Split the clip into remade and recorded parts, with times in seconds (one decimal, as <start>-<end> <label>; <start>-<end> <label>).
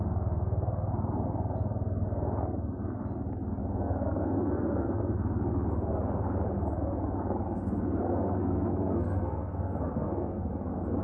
0.0-3.6 recorded; 3.6-5.0 remade; 5.0-8.0 recorded; 8.0-10.5 remade; 10.5-11.0 recorded